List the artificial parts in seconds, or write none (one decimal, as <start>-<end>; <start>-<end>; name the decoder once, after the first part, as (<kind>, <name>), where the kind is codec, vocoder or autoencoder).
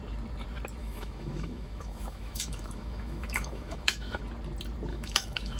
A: 0.8-4.2 (autoencoder, DAC-VAE); 4.9-5.6